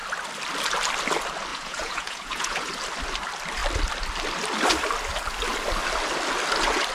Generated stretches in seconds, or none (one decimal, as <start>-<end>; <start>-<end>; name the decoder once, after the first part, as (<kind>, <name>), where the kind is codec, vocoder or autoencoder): 1.5-2.7 (vocoder, Vocos)